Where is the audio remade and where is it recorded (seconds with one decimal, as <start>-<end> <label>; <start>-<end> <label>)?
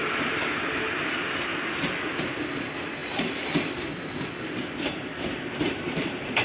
0.0-3.0 recorded; 3.0-3.9 remade; 3.9-5.1 recorded; 5.1-6.4 remade